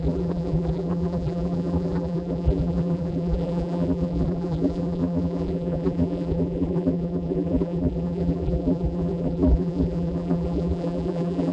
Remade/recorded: remade